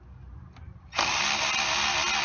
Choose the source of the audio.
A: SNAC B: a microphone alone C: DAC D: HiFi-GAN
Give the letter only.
B